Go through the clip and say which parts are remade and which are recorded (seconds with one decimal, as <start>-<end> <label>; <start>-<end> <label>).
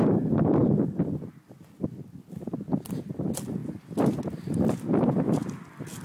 0.0-0.6 remade; 0.6-2.9 recorded; 2.9-3.6 remade; 3.6-4.5 recorded; 4.5-6.0 remade